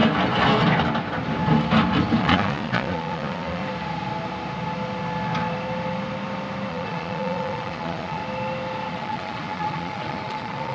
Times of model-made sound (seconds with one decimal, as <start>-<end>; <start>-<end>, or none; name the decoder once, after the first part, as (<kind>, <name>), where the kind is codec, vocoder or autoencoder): 2.2-3.6 (vocoder, Vocos); 6.7-8.2; 8.9-10.7